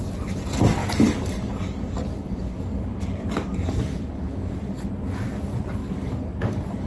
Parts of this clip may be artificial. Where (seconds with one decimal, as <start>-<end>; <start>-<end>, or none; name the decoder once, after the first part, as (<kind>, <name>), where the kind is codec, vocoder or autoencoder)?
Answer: 0.8-4.9 (codec, DAC); 5.8-6.9